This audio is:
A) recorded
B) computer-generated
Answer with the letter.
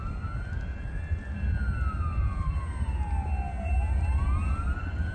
A